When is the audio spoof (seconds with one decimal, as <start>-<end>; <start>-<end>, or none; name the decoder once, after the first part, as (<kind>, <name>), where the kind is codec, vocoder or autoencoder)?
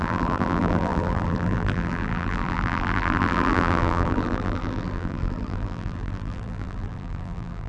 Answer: 0.0-7.7 (vocoder, BigVGAN v2)